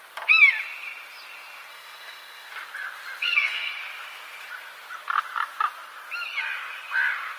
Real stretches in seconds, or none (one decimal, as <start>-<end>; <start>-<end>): 0.0-1.7; 2.5-3.2; 3.7-7.4